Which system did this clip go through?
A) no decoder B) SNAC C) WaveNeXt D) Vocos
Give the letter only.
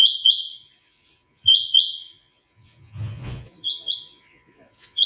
D